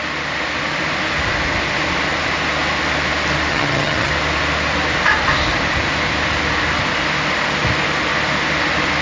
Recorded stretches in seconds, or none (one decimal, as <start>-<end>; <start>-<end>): 0.0-3.5; 4.1-9.0